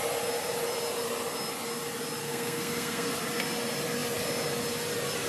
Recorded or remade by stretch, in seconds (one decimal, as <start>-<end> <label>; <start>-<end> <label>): 0.0-2.2 recorded; 2.2-3.1 remade; 3.1-5.3 recorded